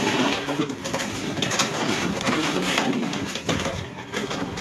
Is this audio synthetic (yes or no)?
yes